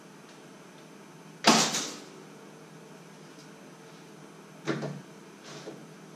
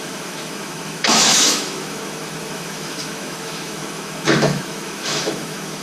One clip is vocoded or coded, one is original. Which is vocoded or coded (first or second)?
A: second